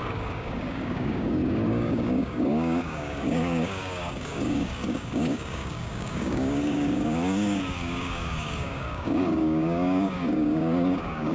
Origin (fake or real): fake